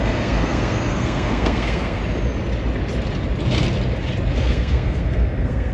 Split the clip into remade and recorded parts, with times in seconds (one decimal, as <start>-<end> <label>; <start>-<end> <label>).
0.0-2.0 remade; 2.0-4.4 recorded; 4.4-5.7 remade